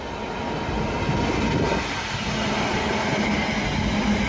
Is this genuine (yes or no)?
yes